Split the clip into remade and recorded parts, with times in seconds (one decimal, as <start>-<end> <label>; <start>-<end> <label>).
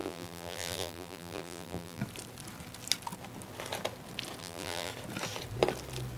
0.0-2.0 remade; 2.0-4.4 recorded; 4.4-4.9 remade; 4.9-6.2 recorded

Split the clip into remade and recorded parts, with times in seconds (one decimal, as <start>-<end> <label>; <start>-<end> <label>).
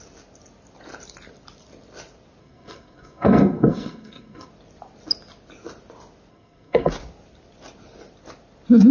0.0-2.4 recorded; 2.4-4.5 remade; 4.5-6.3 recorded; 6.3-6.9 remade; 6.9-8.9 recorded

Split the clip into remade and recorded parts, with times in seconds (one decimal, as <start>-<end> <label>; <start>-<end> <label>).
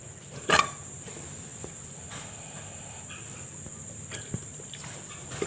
0.0-5.5 recorded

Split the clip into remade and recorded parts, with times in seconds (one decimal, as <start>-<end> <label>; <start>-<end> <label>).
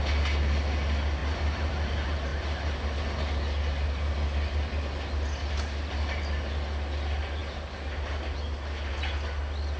0.0-9.8 recorded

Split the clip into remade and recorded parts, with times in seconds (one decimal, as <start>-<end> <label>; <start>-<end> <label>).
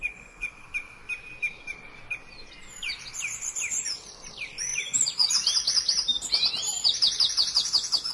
0.0-0.5 remade; 0.5-4.7 recorded; 4.7-5.3 remade; 5.3-8.1 recorded